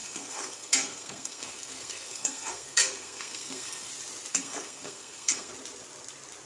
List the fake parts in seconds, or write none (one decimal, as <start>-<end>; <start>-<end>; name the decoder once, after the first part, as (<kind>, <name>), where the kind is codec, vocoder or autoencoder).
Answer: 0.0-3.9 (codec, SNAC); 4.3-5.5